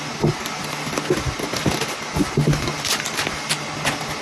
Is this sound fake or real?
real